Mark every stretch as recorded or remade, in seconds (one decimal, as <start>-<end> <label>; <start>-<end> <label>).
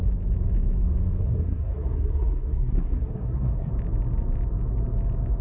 0.0-1.2 recorded; 1.2-3.7 remade; 3.7-5.4 recorded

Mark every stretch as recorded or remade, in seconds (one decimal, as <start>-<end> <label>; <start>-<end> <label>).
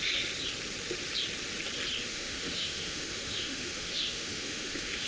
0.0-2.0 recorded; 2.0-5.1 remade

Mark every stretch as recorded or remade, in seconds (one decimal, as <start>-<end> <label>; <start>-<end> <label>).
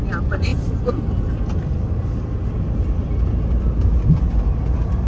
0.0-5.1 recorded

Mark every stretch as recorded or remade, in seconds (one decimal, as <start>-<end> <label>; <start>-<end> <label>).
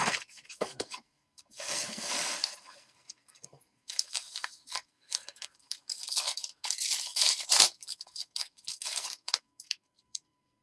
0.0-10.6 remade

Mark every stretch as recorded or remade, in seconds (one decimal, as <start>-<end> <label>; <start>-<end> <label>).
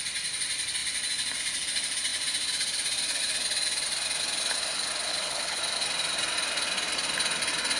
0.0-5.1 recorded; 5.1-5.6 remade; 5.6-7.8 recorded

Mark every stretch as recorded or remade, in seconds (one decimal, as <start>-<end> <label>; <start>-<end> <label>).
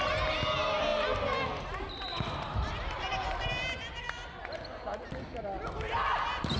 0.0-6.6 recorded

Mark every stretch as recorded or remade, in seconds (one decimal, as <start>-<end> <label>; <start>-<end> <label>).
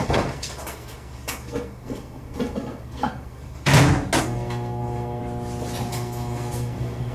0.0-3.7 remade; 3.7-4.2 recorded; 4.2-5.2 remade; 5.2-5.9 recorded; 5.9-7.1 remade